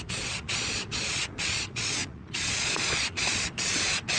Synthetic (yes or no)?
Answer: yes